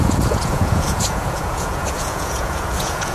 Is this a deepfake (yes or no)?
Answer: yes